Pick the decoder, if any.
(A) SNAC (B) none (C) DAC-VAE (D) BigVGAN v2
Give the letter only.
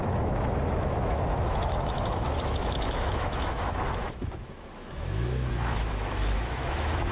C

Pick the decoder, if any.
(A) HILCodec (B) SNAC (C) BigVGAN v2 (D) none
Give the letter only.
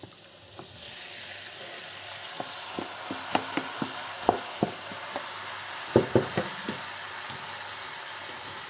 D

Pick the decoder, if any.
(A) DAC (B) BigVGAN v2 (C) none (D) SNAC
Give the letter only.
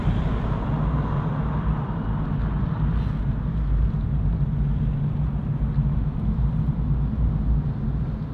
C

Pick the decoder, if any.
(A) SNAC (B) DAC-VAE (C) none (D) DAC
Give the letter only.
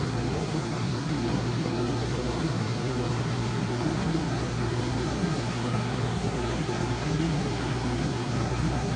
A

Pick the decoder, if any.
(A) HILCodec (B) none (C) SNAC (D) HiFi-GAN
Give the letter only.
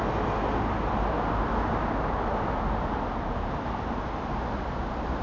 B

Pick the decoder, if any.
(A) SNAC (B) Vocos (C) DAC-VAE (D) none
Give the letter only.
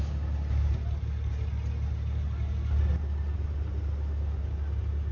D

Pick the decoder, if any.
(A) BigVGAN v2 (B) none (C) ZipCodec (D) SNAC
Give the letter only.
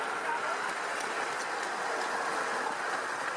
B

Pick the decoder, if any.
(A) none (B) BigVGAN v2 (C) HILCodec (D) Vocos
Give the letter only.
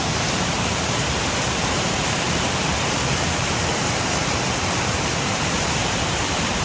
B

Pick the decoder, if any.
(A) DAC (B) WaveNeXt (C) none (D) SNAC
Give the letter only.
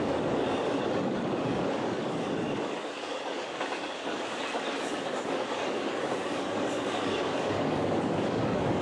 A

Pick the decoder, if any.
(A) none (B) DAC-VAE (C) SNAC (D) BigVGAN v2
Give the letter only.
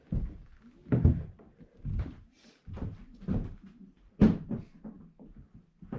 A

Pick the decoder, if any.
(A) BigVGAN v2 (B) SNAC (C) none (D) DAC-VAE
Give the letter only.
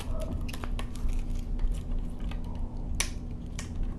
C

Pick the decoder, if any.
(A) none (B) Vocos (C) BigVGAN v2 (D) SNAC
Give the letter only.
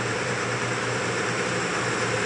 C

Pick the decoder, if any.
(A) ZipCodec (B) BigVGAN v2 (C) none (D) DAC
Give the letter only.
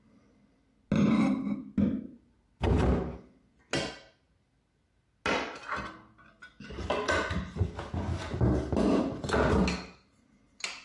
C